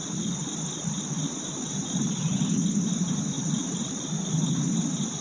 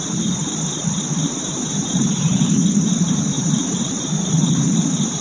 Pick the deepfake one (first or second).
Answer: second